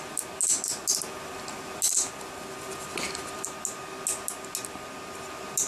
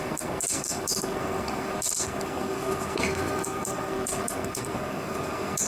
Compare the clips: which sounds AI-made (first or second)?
second